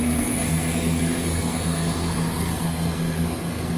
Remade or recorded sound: remade